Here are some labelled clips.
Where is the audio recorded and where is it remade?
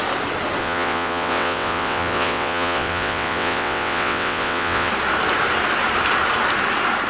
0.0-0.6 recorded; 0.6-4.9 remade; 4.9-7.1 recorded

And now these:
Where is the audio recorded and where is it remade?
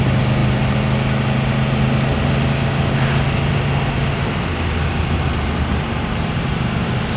0.0-7.2 recorded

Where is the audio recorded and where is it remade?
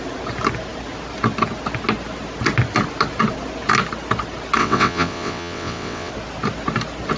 0.0-4.6 recorded; 4.6-6.1 remade; 6.1-7.2 recorded